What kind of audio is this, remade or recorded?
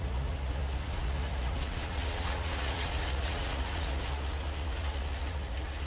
remade